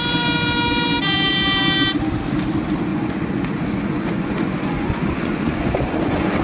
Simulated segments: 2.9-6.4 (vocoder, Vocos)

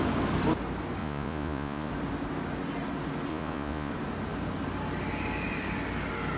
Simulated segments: 1.0-1.9 (vocoder, Vocos); 3.3-3.9